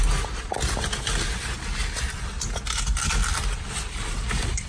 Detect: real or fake real